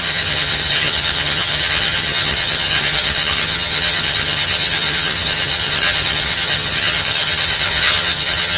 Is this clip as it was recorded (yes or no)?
no